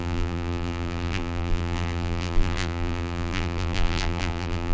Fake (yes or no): yes